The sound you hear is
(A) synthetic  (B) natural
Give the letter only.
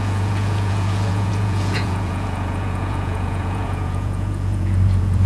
A